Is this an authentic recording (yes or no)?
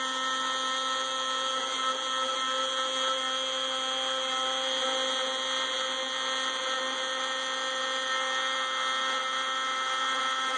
yes